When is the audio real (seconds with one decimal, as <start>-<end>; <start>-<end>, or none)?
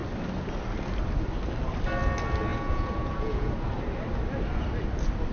0.0-2.5; 3.5-5.3